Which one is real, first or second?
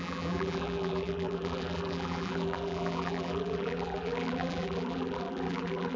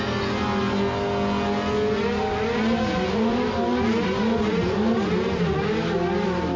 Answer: second